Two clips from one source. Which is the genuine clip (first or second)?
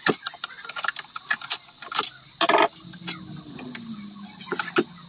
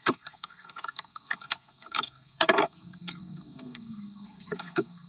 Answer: first